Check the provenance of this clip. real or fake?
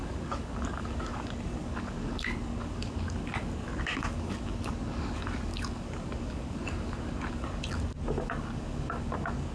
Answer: fake